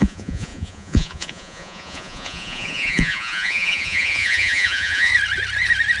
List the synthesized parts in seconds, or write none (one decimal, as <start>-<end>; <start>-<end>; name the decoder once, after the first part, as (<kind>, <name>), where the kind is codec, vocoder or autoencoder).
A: 0.0-5.1 (vocoder, Vocos)